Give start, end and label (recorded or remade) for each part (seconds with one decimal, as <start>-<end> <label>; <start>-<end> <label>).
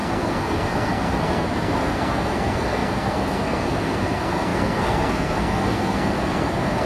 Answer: 0.0-6.9 remade